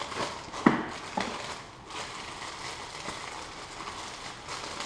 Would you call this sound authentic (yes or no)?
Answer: yes